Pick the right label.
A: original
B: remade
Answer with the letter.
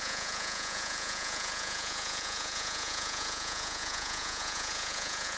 B